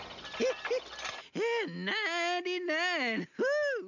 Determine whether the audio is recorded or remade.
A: recorded